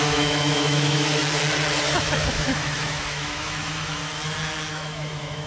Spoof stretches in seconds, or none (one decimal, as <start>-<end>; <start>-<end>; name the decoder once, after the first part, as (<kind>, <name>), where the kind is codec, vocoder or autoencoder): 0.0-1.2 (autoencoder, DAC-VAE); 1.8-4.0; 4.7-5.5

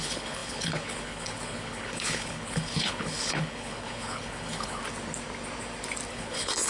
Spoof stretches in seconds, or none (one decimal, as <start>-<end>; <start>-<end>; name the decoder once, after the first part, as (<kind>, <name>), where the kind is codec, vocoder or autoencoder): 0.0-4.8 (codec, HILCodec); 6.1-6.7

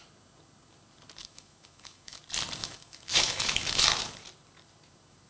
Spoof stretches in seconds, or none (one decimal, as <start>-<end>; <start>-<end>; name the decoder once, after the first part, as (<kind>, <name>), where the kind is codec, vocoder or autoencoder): 1.2-2.2 (autoencoder, DAC-VAE); 2.6-3.8

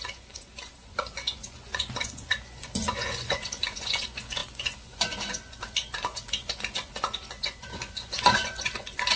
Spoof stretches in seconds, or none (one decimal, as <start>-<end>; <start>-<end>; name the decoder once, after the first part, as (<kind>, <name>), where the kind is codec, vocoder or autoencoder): 0.0-9.2 (vocoder, Vocos)

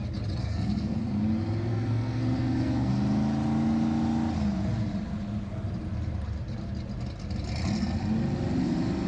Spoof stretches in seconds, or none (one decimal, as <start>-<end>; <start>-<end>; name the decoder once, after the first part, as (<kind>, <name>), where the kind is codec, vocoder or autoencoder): 0.4-1.0 (codec, SNAC); 1.7-2.9

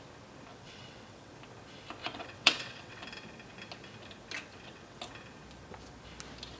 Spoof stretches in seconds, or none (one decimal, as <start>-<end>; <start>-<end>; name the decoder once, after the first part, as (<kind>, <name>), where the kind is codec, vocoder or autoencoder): 0.5-1.3 (vocoder, WaveNeXt); 2.0-3.0; 4.5-5.0

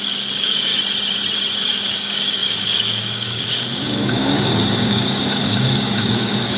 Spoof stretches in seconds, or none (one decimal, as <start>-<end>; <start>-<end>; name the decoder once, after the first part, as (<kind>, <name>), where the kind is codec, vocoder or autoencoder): 0.0-0.7 (codec, DAC); 1.7-6.6

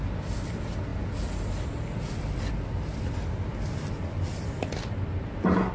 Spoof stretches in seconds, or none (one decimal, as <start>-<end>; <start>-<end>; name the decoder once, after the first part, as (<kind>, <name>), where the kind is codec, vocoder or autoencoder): none